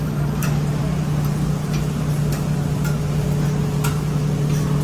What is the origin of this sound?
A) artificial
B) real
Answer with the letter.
B